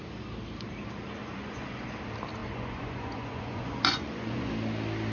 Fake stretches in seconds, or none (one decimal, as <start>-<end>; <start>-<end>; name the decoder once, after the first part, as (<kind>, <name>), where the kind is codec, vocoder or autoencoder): 1.2-1.9 (vocoder, Vocos); 2.4-4.5